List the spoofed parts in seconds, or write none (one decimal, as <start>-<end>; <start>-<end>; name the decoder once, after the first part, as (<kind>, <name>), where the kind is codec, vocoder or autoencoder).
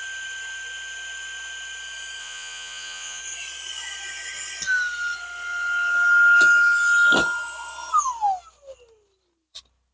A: 2.2-3.2 (vocoder, Vocos)